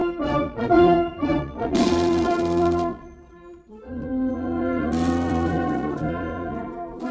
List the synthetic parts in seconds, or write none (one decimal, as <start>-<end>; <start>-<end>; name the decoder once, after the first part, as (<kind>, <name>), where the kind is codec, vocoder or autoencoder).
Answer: 0.0-7.1 (vocoder, Vocos)